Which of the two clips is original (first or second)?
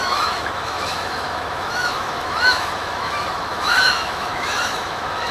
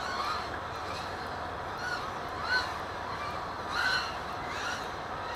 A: second